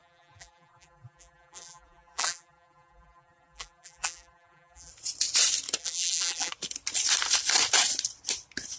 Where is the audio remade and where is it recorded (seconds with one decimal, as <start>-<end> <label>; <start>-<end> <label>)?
0.0-4.9 remade; 4.9-5.8 recorded; 5.8-6.5 remade; 6.5-8.8 recorded